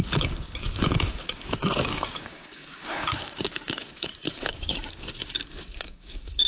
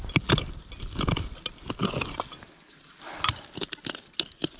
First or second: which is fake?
first